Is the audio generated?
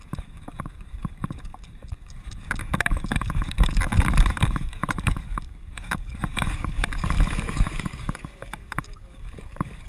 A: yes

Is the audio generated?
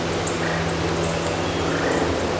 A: no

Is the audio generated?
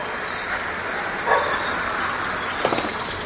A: no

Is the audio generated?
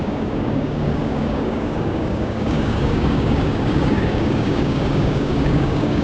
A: yes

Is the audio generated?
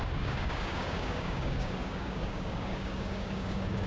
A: yes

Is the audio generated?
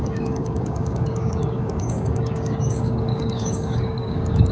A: yes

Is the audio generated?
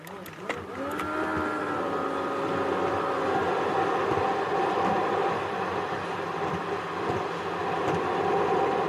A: no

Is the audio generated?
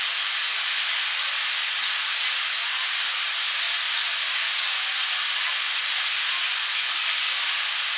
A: no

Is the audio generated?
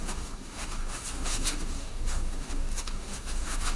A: yes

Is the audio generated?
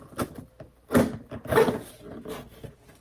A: no